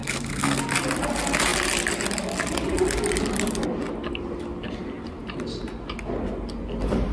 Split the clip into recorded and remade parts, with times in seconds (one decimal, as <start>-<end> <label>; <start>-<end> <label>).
0.0-0.6 remade; 0.6-7.1 recorded